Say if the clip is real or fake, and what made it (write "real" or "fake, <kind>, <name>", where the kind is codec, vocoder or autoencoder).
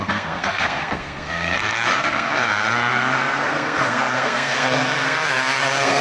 fake, codec, SNAC